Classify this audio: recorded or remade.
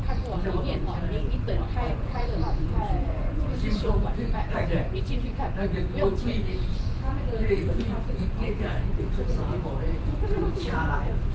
remade